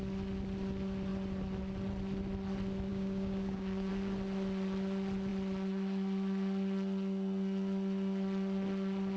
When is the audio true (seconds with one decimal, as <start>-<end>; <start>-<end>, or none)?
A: 0.0-2.9; 3.9-9.2